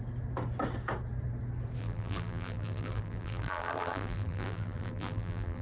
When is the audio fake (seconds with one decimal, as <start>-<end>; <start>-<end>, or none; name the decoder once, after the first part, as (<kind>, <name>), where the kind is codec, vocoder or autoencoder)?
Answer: 1.8-5.6 (vocoder, BigVGAN v2)